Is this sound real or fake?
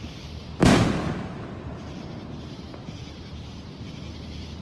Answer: real